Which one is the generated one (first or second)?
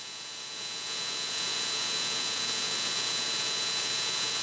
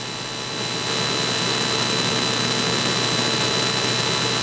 first